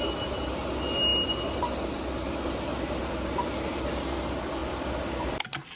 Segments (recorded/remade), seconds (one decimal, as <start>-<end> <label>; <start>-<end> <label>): 0.0-5.8 recorded